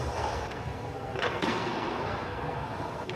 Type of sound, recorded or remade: remade